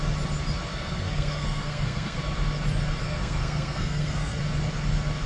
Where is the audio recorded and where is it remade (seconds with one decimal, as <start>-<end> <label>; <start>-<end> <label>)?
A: 0.0-0.7 recorded; 0.7-2.2 remade; 2.2-3.0 recorded; 3.0-4.4 remade; 4.4-5.3 recorded